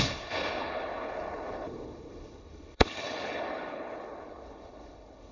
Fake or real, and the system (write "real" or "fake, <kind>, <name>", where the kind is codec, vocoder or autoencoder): fake, codec, HILCodec